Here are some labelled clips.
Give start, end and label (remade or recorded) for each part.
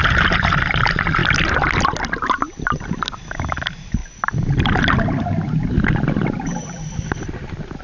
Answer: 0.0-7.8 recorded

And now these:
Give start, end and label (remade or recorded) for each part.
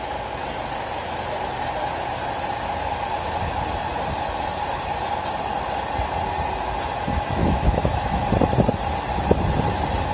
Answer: 0.0-7.4 recorded; 7.4-8.2 remade; 8.2-10.1 recorded